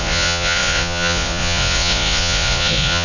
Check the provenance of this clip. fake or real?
fake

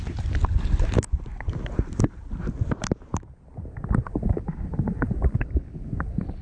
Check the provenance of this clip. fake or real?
real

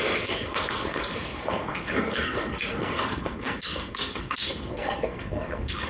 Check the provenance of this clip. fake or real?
fake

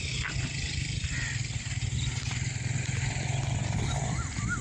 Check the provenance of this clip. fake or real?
real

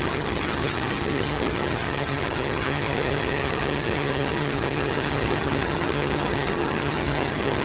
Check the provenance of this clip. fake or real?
fake